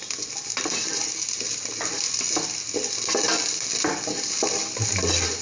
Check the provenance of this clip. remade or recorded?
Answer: recorded